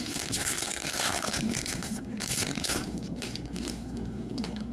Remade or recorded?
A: remade